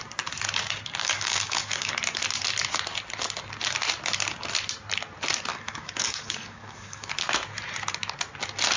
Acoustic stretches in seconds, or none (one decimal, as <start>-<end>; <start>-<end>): 0.0-1.0; 1.9-5.5; 7.1-8.8